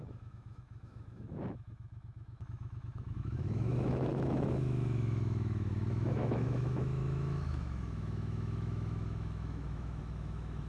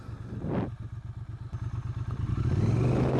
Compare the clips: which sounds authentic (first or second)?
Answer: second